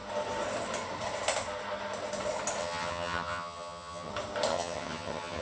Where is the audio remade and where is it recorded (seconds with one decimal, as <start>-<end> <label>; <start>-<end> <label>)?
0.0-2.6 recorded; 2.6-4.1 remade; 4.1-4.5 recorded; 4.5-5.4 remade